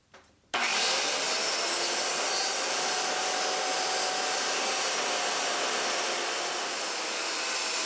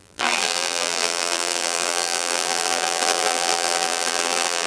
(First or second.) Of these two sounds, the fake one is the second